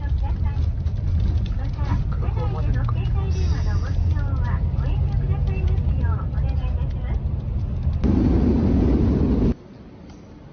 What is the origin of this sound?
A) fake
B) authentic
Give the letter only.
B